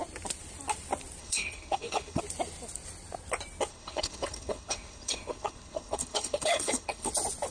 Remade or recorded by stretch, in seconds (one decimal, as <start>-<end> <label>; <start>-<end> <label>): 0.0-1.2 recorded; 1.2-2.2 remade; 2.2-3.7 recorded; 3.7-7.1 remade; 7.1-7.5 recorded